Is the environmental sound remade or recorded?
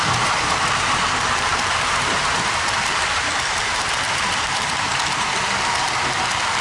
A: remade